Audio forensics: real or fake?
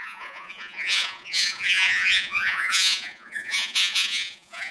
fake